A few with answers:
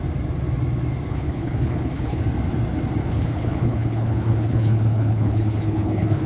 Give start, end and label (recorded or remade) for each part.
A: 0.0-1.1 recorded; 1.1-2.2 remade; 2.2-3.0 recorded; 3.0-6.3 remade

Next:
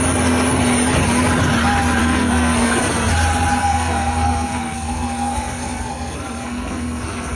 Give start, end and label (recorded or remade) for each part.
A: 0.0-2.0 recorded; 2.0-3.1 remade; 3.1-3.6 recorded; 3.6-7.3 remade

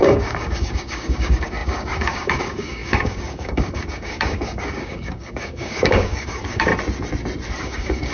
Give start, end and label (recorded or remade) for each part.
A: 0.0-6.7 remade; 6.7-7.6 recorded; 7.6-8.1 remade

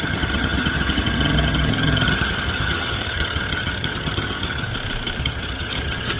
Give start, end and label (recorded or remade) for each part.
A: 0.0-4.7 remade; 4.7-5.2 recorded; 5.2-6.2 remade

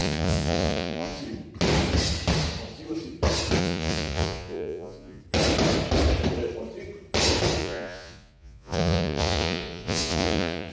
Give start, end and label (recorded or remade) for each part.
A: 0.0-1.2 remade; 1.2-3.6 recorded; 3.6-5.2 remade; 5.2-7.6 recorded; 7.6-10.7 remade

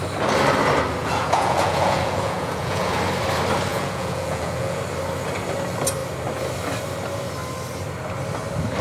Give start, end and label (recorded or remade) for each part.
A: 0.0-1.0 recorded; 1.0-2.9 remade; 2.9-3.7 recorded; 3.7-4.8 remade; 4.8-8.8 recorded

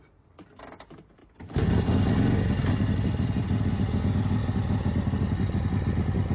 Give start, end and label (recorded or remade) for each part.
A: 0.0-1.2 recorded; 1.2-3.7 remade; 3.7-6.3 recorded